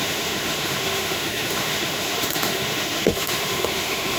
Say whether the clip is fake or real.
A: fake